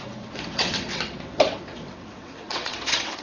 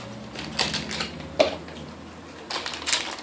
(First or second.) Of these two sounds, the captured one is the second